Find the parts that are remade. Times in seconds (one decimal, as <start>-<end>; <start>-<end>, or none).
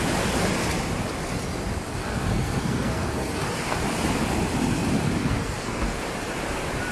2.0-3.5; 5.2-6.0